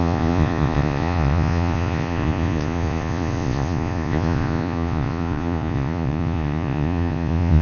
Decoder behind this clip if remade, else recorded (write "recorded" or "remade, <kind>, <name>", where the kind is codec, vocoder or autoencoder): remade, vocoder, Vocos